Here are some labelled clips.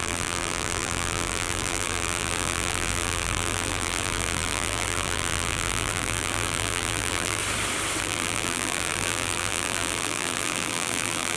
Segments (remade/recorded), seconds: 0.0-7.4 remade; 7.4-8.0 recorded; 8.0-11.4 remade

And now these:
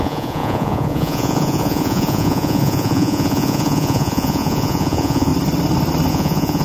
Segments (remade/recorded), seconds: 0.0-5.3 remade; 5.3-6.1 recorded; 6.1-6.6 remade

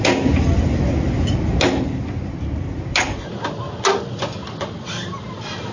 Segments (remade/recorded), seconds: 0.0-5.7 recorded

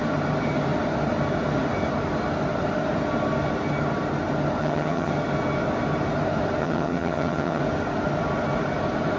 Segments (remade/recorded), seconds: 0.0-4.6 recorded; 4.6-5.1 remade; 5.1-6.6 recorded; 6.6-7.6 remade; 7.6-9.2 recorded

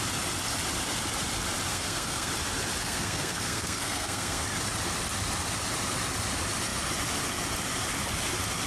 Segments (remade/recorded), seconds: 0.0-1.7 recorded; 1.7-2.3 remade; 2.3-2.8 recorded; 2.8-4.4 remade; 4.4-8.7 recorded

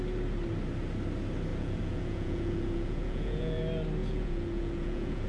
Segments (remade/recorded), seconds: 0.0-1.5 recorded; 1.5-3.6 remade; 3.6-4.0 recorded; 4.0-5.3 remade

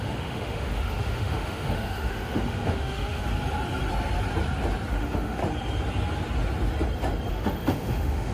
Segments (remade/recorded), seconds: 0.0-3.2 remade; 3.2-4.9 recorded; 4.9-5.4 remade; 5.4-7.3 recorded; 7.3-8.3 remade

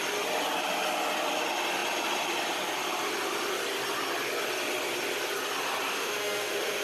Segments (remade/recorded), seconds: 0.0-5.9 recorded; 5.9-6.8 remade